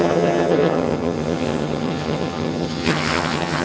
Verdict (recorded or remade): remade